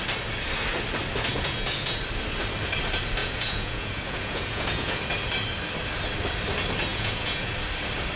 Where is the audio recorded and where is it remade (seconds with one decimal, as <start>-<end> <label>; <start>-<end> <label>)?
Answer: 0.0-1.3 recorded; 1.3-2.0 remade; 2.0-3.2 recorded; 3.2-5.0 remade; 5.0-6.9 recorded; 6.9-7.5 remade; 7.5-8.2 recorded